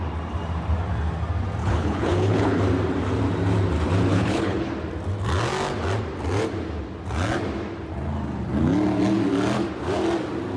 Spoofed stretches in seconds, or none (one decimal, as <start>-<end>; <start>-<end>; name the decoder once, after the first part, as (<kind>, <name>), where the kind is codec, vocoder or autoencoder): 1.6-2.6 (codec, HILCodec); 4.1-4.7